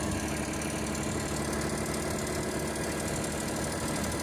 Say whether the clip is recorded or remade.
recorded